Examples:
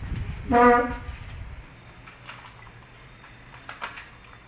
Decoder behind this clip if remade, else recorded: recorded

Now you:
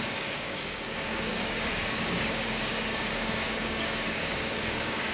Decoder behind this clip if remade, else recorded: remade, codec, DAC